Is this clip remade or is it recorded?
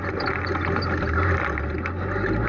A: recorded